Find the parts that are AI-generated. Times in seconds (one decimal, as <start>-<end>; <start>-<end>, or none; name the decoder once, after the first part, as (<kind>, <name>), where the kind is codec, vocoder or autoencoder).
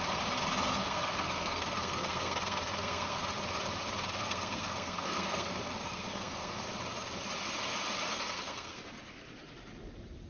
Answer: 0.8-3.2 (codec, SNAC); 4.2-6.6; 8.1-8.8